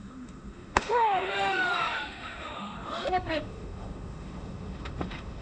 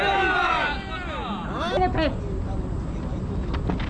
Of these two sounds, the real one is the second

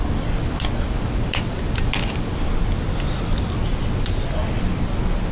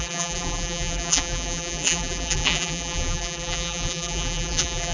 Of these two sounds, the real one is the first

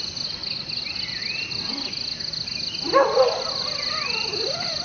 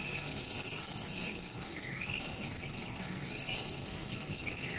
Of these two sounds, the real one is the first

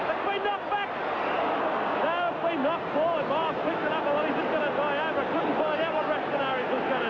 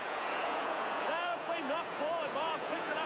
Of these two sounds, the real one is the first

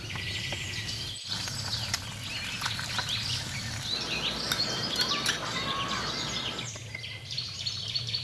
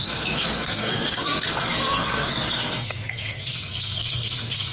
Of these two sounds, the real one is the first